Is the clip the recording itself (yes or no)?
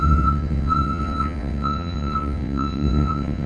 no